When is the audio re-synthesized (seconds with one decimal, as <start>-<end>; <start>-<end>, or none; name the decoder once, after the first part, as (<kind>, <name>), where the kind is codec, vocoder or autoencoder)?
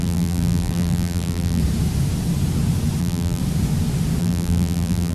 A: 0.0-1.6 (vocoder, BigVGAN v2); 3.0-3.4; 4.2-5.1